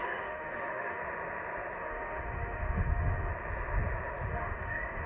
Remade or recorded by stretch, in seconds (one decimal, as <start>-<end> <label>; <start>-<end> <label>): 0.0-1.0 remade; 1.0-1.8 recorded; 1.8-3.3 remade; 3.3-4.3 recorded; 4.3-5.1 remade

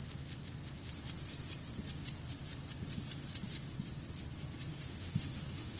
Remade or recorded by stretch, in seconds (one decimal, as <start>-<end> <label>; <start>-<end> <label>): 0.0-4.7 recorded; 4.7-5.8 remade